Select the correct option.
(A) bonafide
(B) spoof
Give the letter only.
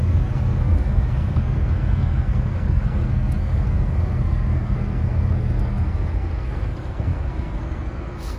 B